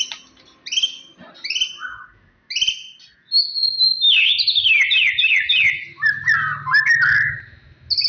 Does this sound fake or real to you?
real